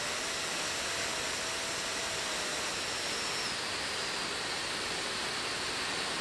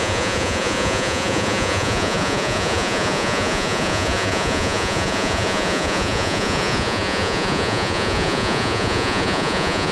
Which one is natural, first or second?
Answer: first